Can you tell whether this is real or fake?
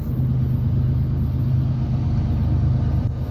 real